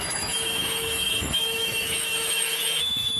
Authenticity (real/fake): fake